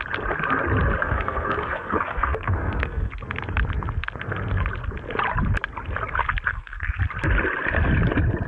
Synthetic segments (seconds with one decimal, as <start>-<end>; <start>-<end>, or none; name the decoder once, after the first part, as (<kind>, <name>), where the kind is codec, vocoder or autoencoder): 1.0-3.1 (codec, SNAC); 6.5-7.0